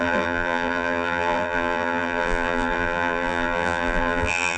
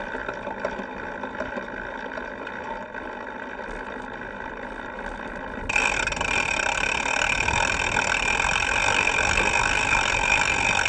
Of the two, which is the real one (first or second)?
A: second